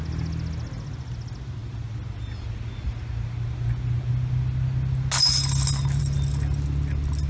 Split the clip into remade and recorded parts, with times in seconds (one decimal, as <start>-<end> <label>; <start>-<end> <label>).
0.0-7.3 recorded